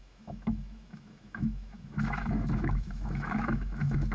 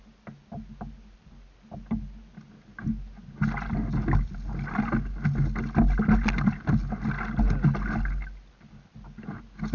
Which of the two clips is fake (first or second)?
first